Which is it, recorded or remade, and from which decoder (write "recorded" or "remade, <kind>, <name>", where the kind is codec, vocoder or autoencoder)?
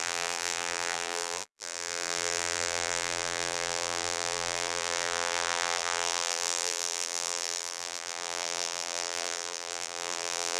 remade, vocoder, BigVGAN v2